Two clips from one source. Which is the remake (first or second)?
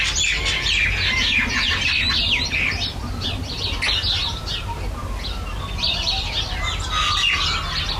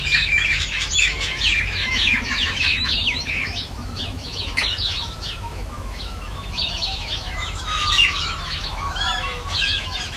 second